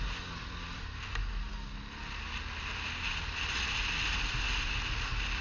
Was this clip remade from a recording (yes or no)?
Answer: no